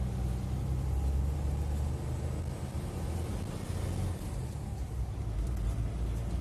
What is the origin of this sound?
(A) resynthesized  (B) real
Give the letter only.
B